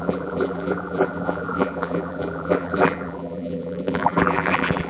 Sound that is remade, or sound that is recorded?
remade